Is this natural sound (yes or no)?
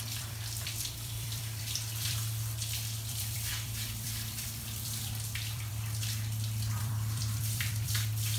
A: no